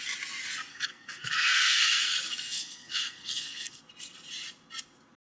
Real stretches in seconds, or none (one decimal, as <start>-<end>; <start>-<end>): 0.0-0.7; 3.8-5.2